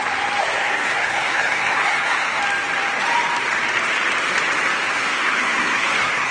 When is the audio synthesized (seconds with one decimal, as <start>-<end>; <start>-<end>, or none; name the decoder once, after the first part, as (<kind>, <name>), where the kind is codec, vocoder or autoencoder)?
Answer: 0.4-2.4 (codec, SNAC); 4.7-6.3